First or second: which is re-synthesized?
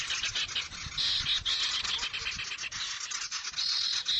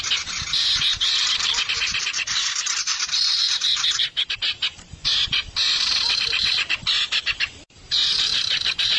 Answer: second